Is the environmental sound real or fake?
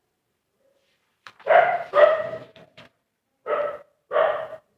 fake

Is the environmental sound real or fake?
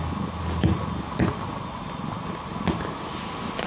real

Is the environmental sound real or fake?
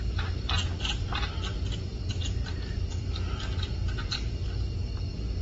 real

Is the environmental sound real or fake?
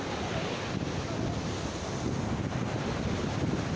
real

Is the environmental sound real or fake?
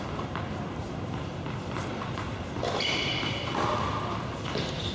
fake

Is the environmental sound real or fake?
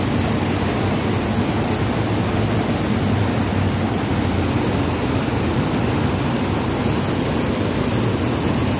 real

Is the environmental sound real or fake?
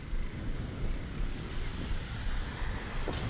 fake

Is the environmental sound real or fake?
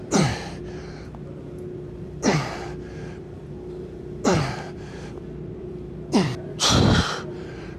fake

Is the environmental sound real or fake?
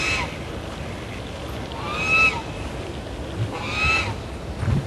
real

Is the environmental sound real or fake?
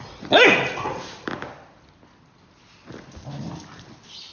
real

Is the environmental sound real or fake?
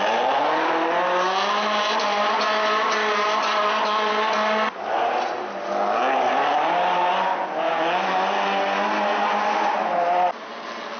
real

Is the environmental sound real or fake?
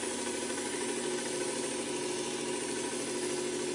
real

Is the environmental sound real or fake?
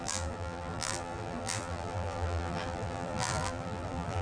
fake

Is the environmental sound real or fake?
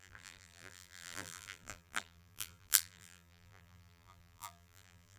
fake